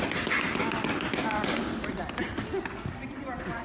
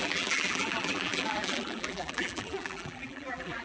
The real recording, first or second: first